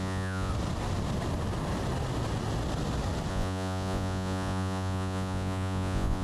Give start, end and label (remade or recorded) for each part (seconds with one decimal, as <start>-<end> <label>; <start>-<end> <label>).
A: 0.0-0.5 remade; 0.5-3.3 recorded; 3.3-6.2 remade